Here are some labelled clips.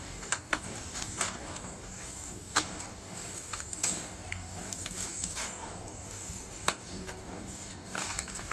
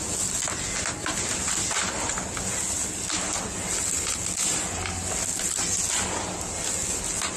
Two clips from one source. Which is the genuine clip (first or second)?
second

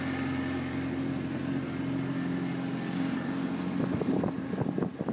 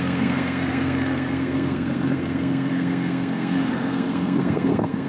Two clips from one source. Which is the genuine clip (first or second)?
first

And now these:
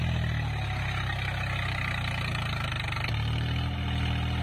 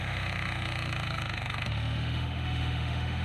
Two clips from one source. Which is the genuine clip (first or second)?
first